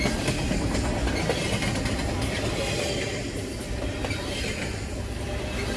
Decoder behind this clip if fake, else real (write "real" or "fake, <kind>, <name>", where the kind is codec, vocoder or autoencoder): real